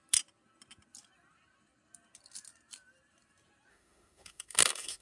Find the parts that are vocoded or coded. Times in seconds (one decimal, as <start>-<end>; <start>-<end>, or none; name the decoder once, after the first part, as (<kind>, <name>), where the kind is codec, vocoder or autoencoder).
3.7-5.0 (autoencoder, DAC-VAE)